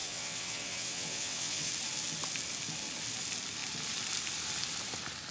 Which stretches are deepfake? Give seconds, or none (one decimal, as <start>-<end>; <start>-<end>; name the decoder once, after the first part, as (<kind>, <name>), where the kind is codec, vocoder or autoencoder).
0.0-1.7 (vocoder, WaveNeXt)